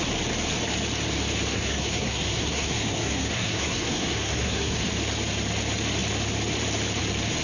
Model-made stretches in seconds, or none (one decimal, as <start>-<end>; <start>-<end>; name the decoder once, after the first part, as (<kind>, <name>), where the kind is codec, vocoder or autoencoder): 1.5-4.9 (codec, SNAC)